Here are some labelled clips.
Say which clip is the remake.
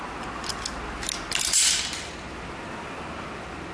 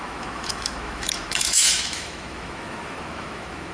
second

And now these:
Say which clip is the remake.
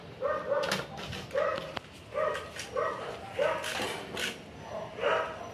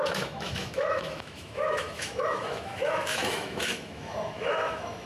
second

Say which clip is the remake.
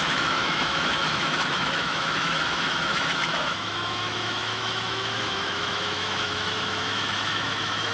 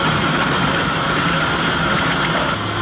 first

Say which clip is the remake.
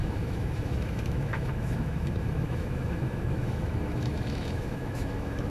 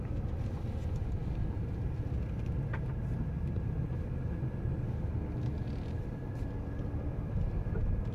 first